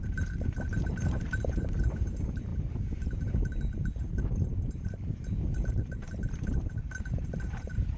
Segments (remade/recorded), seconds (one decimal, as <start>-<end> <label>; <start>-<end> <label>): 0.0-8.0 remade